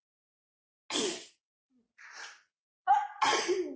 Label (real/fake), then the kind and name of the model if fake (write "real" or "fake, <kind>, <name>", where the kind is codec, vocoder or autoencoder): real